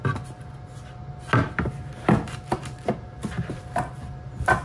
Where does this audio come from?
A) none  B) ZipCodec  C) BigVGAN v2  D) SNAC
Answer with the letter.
A